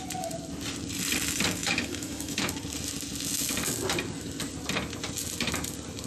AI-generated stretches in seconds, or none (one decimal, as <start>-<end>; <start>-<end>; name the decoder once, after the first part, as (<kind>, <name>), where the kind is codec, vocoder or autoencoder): 1.6-2.5 (autoencoder, DAC-VAE)